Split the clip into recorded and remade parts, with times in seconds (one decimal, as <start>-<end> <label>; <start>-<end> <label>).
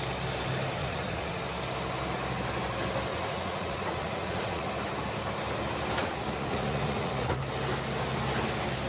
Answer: 0.0-0.8 recorded; 0.8-1.4 remade; 1.4-3.1 recorded; 3.1-4.7 remade; 4.7-6.0 recorded; 6.0-7.4 remade; 7.4-8.9 recorded